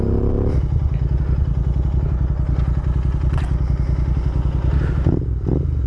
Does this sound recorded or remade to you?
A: recorded